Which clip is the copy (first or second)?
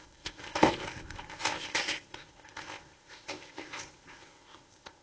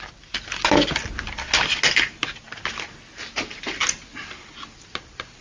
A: first